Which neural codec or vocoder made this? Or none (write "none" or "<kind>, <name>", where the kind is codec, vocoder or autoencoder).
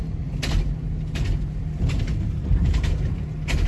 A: none